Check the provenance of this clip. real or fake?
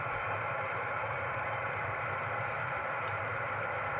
fake